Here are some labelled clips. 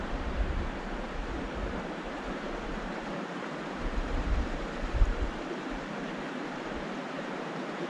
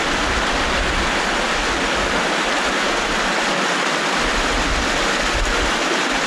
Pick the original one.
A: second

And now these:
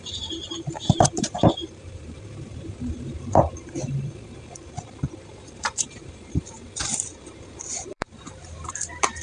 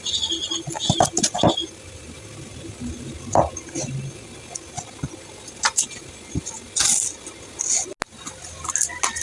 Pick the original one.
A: second